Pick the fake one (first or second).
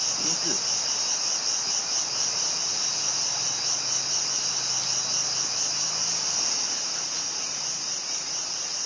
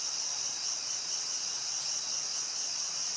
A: second